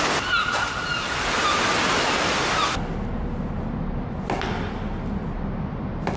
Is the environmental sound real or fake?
real